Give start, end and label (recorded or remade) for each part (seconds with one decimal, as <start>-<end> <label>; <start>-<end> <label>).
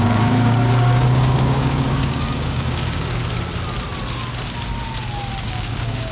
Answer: 0.0-3.2 remade; 3.2-5.4 recorded; 5.4-6.1 remade